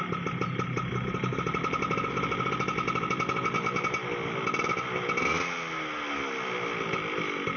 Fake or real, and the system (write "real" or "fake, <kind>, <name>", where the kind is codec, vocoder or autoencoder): real